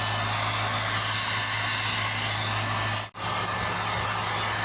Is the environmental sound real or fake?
real